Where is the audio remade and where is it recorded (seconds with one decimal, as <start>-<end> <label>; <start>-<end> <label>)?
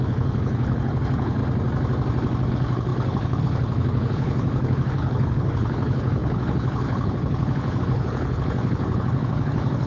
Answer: 0.0-1.4 remade; 1.4-2.5 recorded; 2.5-9.9 remade